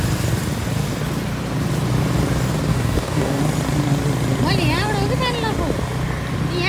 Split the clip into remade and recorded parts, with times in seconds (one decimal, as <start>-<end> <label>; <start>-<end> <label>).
0.0-2.7 recorded; 2.7-3.4 remade; 3.4-6.7 recorded